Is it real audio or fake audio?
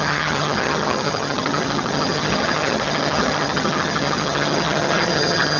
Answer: fake